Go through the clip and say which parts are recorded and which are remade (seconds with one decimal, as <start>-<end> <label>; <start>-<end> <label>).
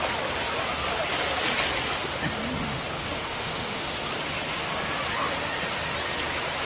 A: 0.0-3.0 recorded; 3.0-3.9 remade; 3.9-6.6 recorded